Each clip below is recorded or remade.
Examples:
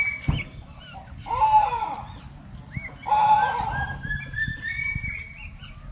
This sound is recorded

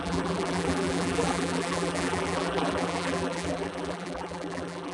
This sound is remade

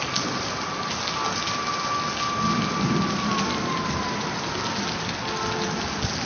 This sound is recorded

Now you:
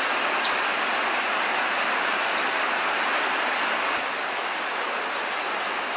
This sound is recorded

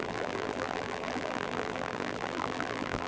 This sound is remade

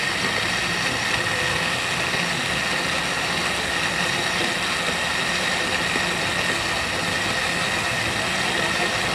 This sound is recorded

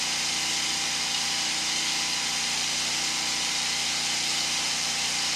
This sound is remade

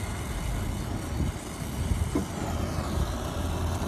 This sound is recorded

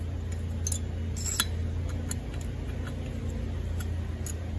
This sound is recorded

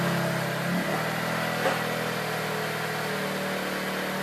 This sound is recorded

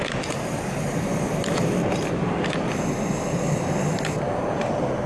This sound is remade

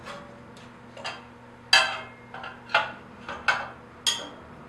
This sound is recorded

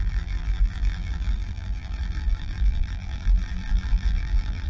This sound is remade